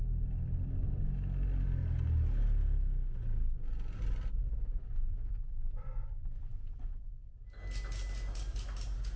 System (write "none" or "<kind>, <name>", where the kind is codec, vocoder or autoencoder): none